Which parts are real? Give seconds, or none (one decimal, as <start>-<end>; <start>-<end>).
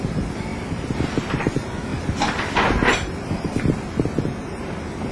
0.0-0.5; 1.5-1.9; 3.6-5.1